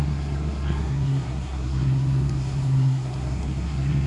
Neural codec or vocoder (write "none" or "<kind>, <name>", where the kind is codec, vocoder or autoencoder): codec, SNAC